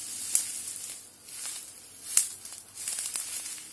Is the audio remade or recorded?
recorded